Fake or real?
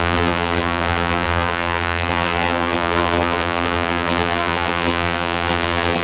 fake